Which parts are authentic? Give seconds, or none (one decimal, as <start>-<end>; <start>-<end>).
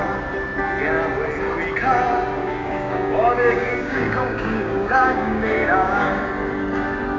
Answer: 0.0-2.4; 6.1-7.2